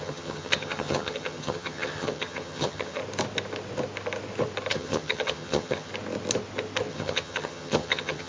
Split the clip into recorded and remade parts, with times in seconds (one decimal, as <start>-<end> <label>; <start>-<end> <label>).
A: 0.0-3.0 remade; 3.0-4.7 recorded; 4.7-5.9 remade; 5.9-6.9 recorded; 6.9-8.3 remade